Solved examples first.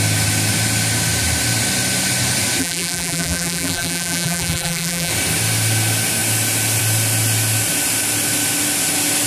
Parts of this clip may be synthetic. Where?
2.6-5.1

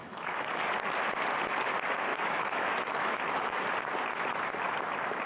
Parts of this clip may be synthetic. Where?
0.0-0.5; 2.1-3.6